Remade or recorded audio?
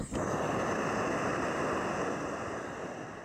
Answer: recorded